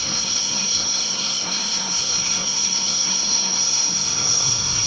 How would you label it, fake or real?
fake